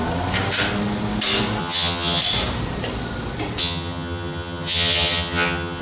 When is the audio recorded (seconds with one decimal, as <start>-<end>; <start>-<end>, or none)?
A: 0.0-1.6; 2.2-3.6